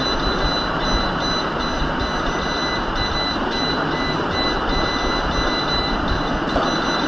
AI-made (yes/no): no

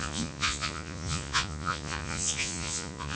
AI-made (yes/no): yes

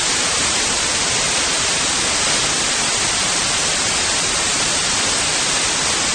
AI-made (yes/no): no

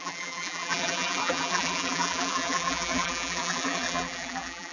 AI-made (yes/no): yes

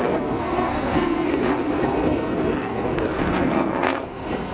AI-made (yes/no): yes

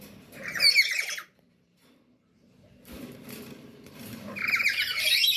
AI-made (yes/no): yes